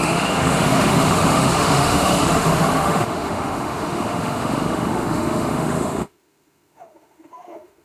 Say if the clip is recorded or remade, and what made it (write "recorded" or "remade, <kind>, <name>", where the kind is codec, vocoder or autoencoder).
remade, autoencoder, DAC-VAE